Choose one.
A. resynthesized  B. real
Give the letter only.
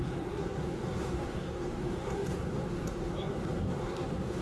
A